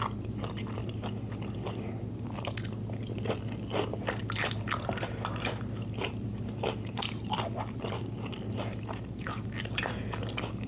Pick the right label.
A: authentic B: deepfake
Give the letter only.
A